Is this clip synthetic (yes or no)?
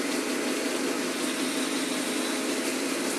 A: no